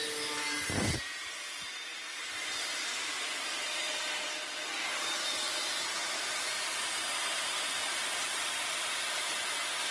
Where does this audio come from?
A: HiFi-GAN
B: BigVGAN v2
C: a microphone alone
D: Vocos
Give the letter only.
C